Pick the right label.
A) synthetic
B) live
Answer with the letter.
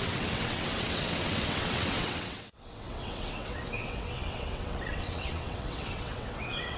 A